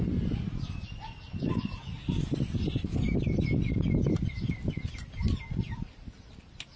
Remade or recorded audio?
recorded